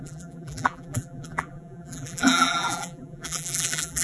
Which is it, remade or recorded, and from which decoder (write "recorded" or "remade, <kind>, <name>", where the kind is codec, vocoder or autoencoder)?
remade, vocoder, BigVGAN v2